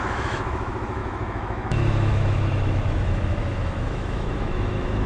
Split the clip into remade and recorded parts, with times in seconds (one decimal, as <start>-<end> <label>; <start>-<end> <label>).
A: 0.0-5.1 remade